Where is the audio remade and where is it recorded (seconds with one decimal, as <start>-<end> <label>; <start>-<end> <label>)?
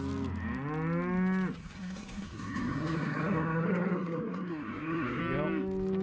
0.0-1.6 recorded; 1.6-5.2 remade; 5.2-6.0 recorded